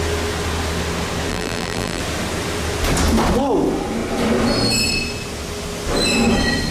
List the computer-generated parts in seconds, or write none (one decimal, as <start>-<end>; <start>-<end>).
1.3-2.0